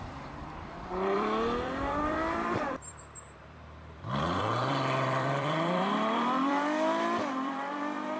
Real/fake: fake